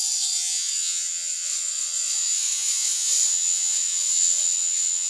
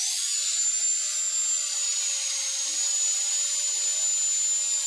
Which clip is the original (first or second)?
second